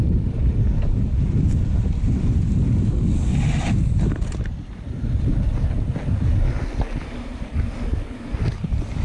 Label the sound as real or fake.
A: real